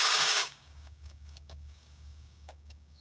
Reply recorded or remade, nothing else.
remade